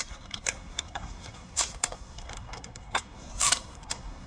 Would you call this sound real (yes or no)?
no